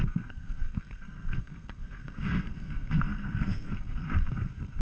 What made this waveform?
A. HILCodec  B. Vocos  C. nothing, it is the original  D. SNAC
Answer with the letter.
D